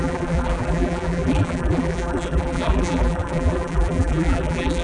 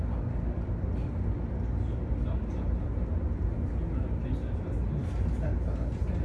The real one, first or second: second